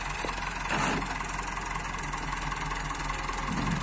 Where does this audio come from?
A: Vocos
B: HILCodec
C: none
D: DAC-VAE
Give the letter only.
C